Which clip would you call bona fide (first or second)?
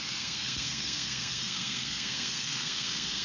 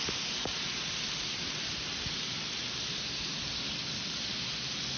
second